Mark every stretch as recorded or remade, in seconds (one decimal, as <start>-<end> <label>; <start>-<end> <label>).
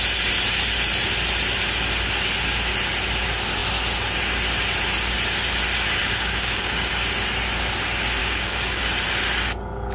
0.0-6.0 recorded; 6.0-6.9 remade; 6.9-8.2 recorded; 8.2-8.8 remade; 8.8-9.9 recorded